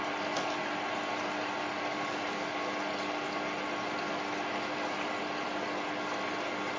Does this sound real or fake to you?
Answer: real